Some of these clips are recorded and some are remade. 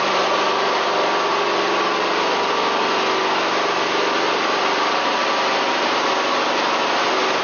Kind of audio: recorded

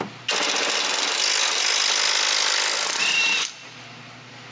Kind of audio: recorded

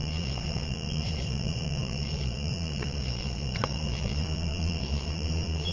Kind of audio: remade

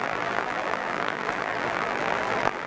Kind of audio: remade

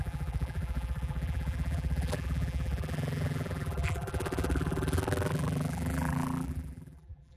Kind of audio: remade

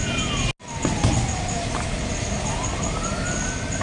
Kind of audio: recorded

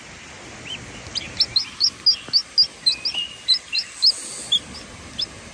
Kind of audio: recorded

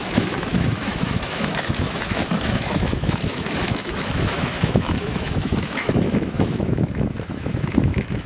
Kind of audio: remade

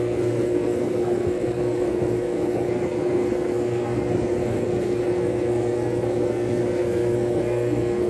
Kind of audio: remade